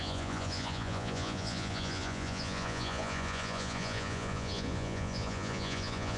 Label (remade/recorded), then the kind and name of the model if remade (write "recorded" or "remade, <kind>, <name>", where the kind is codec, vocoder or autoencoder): remade, vocoder, Vocos